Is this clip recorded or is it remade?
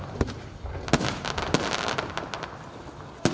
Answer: recorded